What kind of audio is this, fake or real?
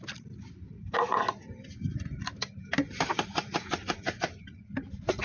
fake